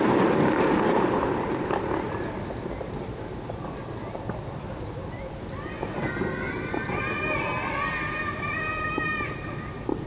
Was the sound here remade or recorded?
remade